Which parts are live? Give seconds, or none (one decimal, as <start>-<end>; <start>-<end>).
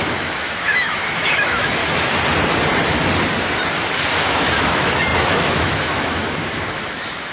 1.8-4.2